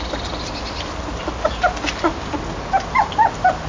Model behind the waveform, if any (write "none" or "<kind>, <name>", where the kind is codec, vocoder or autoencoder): none